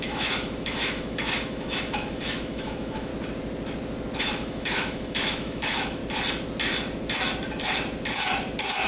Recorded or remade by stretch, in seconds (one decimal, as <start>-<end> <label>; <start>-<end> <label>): 0.0-3.1 remade; 3.1-4.2 recorded; 4.2-6.0 remade; 6.0-8.9 recorded